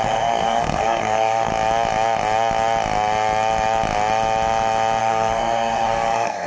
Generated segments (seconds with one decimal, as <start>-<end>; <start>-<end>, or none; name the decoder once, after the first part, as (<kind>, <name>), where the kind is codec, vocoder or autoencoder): 0.0-1.5 (codec, SNAC); 5.0-6.5